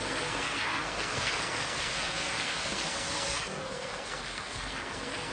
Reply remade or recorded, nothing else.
remade